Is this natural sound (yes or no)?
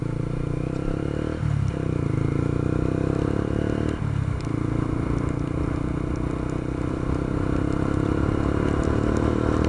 yes